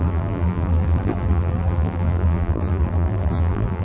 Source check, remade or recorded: remade